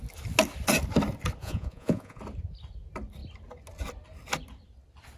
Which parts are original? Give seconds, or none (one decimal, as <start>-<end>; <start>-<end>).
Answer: 0.0-1.4; 2.2-5.2